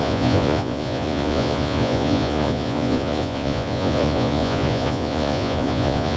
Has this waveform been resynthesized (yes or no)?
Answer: yes